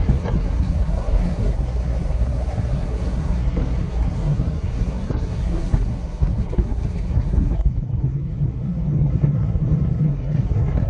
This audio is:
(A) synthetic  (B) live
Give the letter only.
A